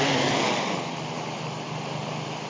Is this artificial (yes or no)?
yes